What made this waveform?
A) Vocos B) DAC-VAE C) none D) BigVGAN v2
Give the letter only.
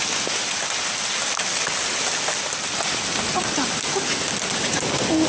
C